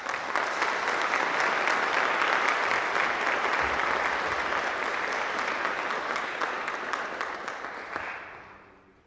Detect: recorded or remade recorded